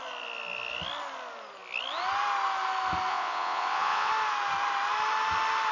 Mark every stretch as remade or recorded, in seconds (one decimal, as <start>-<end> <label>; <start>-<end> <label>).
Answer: 0.0-3.1 recorded; 3.1-4.1 remade; 4.1-5.7 recorded